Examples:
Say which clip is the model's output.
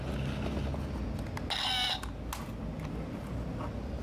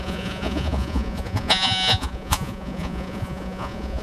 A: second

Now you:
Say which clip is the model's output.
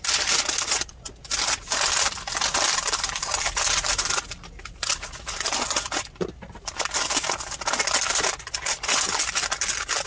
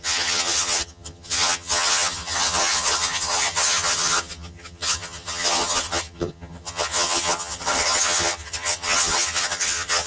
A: second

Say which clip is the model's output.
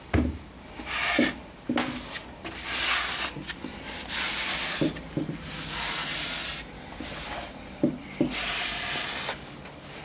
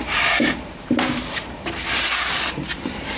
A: second